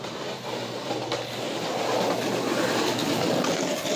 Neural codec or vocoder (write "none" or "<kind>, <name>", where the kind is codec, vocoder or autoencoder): none